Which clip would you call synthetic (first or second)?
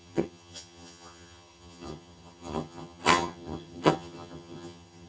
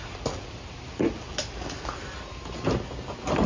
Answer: first